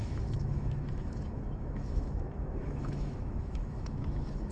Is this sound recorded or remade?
remade